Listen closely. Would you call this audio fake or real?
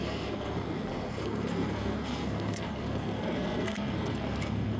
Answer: fake